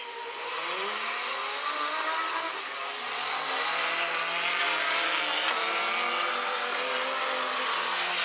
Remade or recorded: recorded